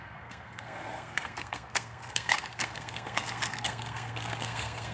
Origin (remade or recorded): remade